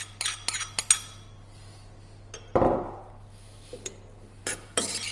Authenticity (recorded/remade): recorded